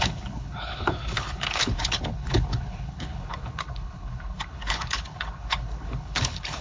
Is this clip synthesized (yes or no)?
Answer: yes